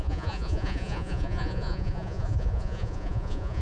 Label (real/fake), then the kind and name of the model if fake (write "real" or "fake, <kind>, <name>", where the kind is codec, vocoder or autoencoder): fake, vocoder, Vocos